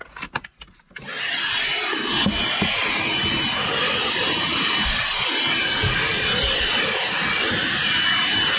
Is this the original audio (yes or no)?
yes